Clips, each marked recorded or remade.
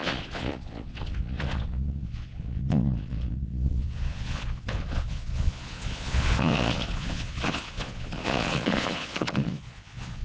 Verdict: remade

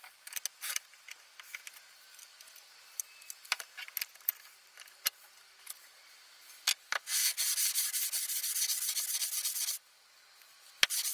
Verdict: recorded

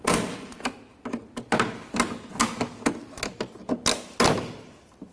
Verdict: recorded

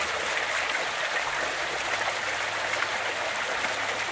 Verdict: recorded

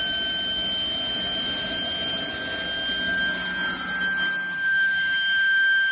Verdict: recorded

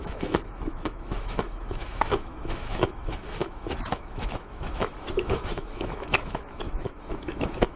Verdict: remade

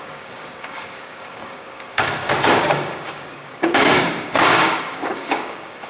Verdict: remade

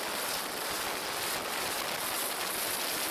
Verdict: recorded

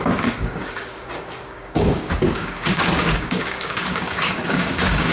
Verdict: remade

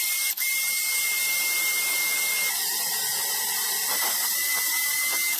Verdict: recorded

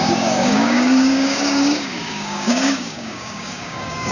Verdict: remade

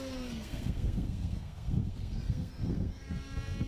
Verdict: remade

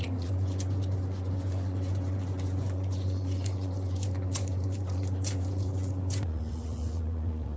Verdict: remade